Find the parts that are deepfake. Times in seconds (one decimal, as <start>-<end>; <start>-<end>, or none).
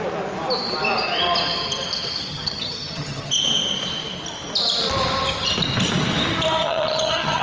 2.3-3.3; 6.6-7.4